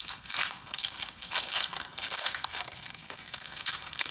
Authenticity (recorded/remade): remade